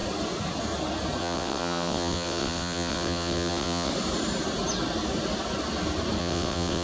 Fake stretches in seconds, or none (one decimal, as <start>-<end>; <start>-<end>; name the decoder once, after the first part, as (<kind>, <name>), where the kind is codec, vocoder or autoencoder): 1.2-3.9 (vocoder, WaveNeXt); 6.2-6.8